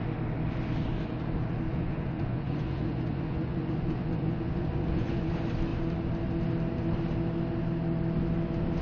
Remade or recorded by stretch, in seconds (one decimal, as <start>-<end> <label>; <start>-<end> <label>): 0.0-1.7 recorded; 1.7-5.3 remade; 5.3-8.8 recorded